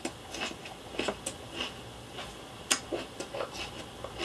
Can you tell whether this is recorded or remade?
recorded